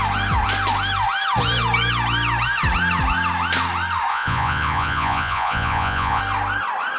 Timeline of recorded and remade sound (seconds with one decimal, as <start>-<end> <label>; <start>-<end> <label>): 0.0-4.1 recorded; 4.1-6.2 remade; 6.2-7.0 recorded